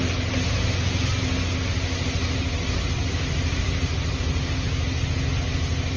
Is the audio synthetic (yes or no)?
no